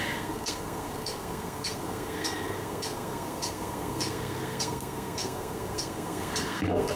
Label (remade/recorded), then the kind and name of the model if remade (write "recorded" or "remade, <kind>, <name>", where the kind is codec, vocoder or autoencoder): remade, codec, SNAC